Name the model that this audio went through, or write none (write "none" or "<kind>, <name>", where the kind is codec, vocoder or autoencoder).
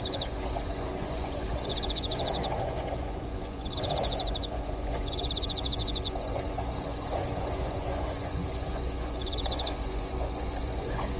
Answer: vocoder, Vocos